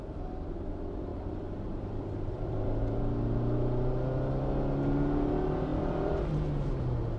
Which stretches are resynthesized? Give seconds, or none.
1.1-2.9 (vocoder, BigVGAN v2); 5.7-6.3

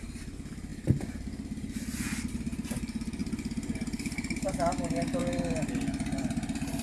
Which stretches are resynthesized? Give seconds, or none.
none

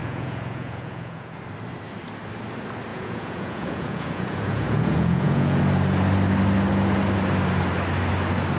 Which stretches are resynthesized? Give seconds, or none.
0.0-1.4 (vocoder, Vocos); 2.9-5.6

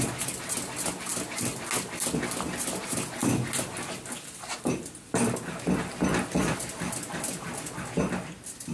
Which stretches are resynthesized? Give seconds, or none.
none

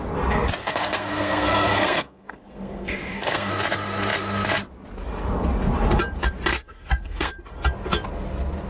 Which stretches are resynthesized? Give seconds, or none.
0.6-3.5 (codec, SNAC); 6.5-7.3

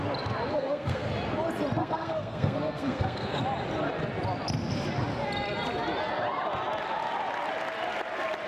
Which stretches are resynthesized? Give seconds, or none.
0.5-1.1 (codec, SNAC); 1.8-3.4